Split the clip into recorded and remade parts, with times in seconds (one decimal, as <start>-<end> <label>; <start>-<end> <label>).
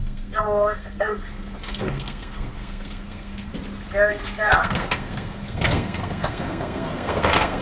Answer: 0.0-3.5 remade; 3.5-4.1 recorded; 4.1-7.6 remade